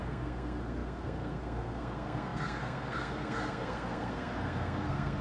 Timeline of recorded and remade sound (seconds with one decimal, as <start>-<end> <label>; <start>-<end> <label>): 0.0-5.2 remade